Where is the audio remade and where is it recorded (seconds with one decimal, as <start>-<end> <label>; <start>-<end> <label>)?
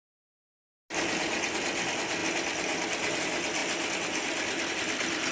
0.0-5.3 recorded